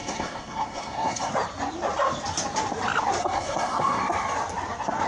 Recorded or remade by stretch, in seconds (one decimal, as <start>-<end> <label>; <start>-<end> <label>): 0.0-1.3 remade; 1.3-3.2 recorded; 3.2-4.0 remade; 4.0-5.1 recorded